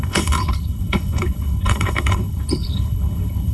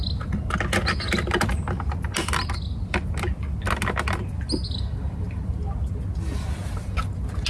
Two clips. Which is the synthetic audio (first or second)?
first